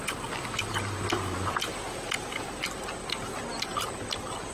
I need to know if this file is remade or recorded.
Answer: recorded